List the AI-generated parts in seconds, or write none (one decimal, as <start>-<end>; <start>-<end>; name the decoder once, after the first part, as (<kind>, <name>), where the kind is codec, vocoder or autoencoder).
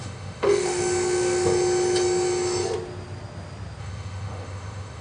0.0-0.8 (autoencoder, DAC-VAE); 3.8-5.0